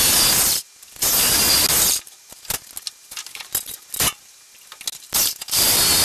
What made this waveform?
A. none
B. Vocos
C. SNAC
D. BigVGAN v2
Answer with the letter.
A